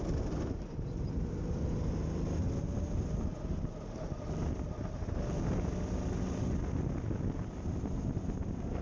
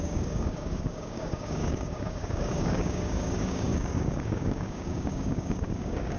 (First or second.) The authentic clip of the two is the first